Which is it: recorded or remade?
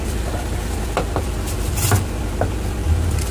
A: recorded